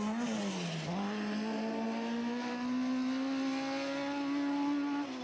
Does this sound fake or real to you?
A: real